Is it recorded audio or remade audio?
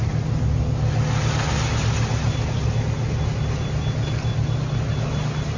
recorded